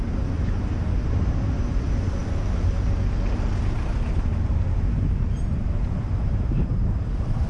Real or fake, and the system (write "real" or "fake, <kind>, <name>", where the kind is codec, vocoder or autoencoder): fake, vocoder, BigVGAN v2